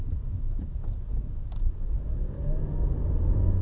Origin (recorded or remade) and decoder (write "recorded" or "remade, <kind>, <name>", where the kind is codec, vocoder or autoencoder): remade, vocoder, Vocos